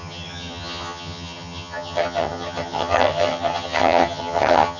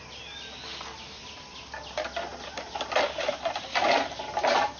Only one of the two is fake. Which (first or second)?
first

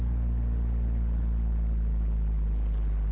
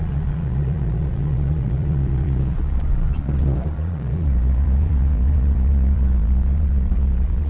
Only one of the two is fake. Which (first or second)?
second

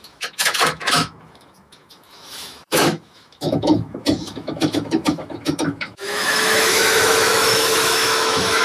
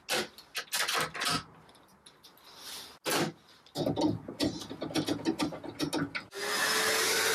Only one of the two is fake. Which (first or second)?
first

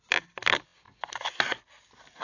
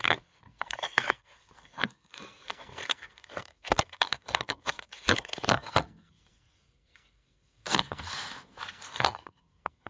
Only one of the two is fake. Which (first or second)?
second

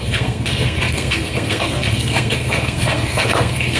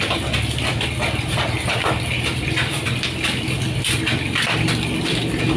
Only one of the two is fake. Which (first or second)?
first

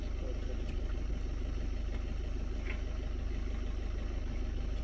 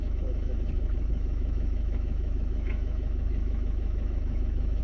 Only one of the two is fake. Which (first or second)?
second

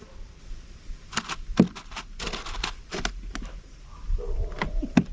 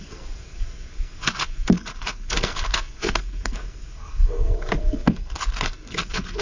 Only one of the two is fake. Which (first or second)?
second